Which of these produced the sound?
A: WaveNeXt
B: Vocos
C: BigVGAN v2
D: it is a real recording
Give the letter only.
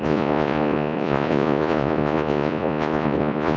B